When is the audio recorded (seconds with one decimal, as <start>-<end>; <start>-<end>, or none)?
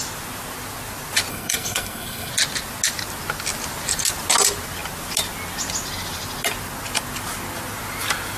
0.0-1.3; 2.3-8.4